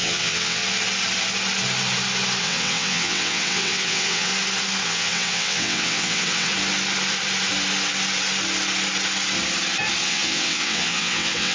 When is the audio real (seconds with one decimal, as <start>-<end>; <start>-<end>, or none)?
0.6-2.4; 4.3-4.8; 6.5-10.0